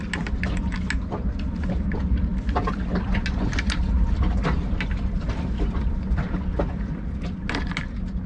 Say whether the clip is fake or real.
real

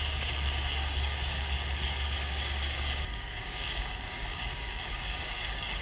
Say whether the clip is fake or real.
fake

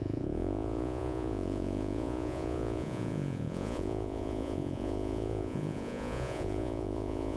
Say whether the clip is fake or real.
fake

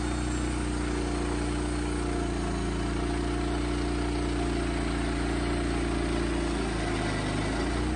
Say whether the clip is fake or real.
real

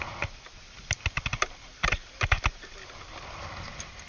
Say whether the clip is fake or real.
real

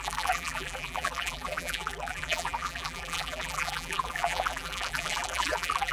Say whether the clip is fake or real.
fake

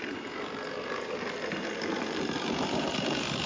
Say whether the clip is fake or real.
fake